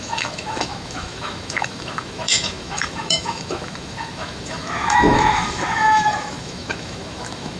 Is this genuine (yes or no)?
no